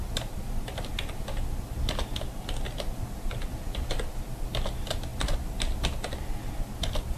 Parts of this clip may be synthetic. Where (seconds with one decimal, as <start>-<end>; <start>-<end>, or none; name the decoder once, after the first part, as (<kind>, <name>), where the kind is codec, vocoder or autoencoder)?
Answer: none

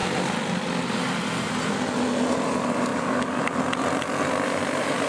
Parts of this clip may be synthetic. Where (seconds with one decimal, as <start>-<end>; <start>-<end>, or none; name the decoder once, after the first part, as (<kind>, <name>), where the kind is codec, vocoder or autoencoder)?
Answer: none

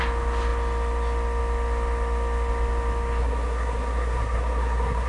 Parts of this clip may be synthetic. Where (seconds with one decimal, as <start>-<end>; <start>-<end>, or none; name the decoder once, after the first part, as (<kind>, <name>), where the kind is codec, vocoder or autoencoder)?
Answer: 3.2-5.1 (codec, SNAC)

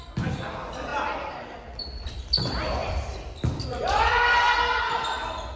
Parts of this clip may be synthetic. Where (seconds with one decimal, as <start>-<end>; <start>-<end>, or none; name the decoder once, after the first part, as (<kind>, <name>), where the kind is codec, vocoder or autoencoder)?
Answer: 0.9-2.2 (vocoder, BigVGAN v2); 2.8-4.8

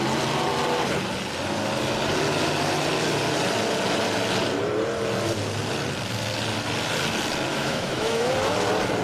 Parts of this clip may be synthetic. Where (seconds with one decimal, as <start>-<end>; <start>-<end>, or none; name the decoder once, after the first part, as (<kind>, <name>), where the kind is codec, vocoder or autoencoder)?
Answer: 7.5-8.3 (autoencoder, DAC-VAE)

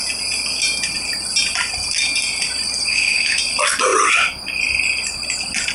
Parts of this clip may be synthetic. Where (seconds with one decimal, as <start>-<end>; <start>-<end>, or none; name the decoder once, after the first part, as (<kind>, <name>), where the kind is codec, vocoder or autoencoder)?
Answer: 2.9-3.4 (autoencoder, DAC-VAE)